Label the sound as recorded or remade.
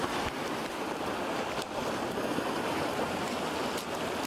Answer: remade